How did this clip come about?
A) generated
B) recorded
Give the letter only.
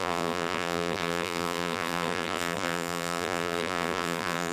A